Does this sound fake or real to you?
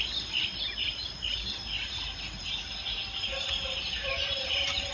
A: real